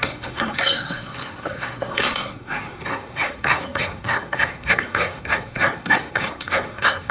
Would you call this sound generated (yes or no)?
yes